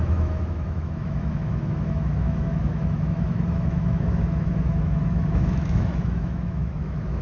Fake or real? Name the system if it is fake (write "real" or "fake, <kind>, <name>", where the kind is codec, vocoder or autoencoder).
fake, autoencoder, DAC-VAE